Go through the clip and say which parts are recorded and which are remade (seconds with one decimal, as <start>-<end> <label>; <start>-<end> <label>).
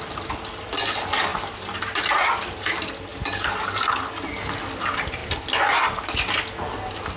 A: 0.0-1.3 recorded; 1.3-2.0 remade; 2.0-3.1 recorded; 3.1-4.0 remade; 4.0-7.2 recorded